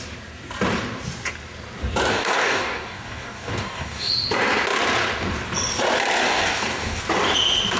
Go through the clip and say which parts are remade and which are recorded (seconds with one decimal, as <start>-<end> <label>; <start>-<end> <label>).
0.0-2.1 recorded; 2.1-4.1 remade; 4.1-6.2 recorded; 6.2-7.0 remade; 7.0-7.8 recorded